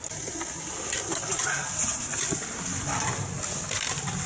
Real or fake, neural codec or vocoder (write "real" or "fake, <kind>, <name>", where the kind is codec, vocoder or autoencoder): real